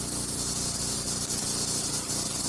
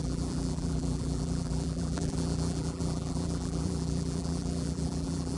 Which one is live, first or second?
first